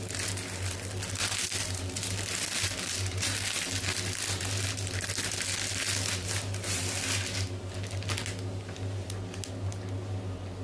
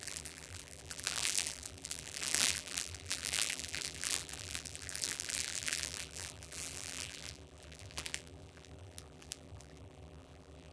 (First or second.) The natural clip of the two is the first